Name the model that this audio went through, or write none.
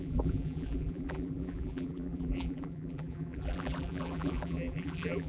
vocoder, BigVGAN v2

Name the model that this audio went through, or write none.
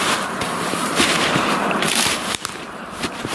vocoder, BigVGAN v2